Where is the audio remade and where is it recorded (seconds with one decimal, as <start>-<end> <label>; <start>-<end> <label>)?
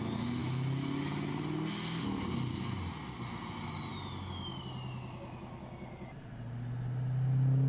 0.0-0.4 recorded; 0.4-1.3 remade; 1.3-7.7 recorded